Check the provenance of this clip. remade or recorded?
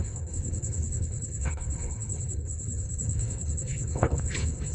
remade